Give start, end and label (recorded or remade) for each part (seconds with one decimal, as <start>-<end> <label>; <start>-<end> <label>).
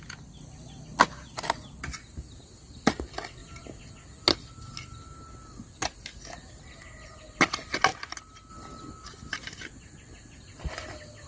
0.0-11.3 recorded